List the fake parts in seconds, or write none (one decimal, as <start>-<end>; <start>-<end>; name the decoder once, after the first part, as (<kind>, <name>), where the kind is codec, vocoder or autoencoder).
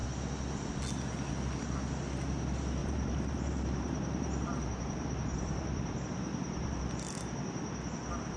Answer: 2.8-6.8 (vocoder, BigVGAN v2)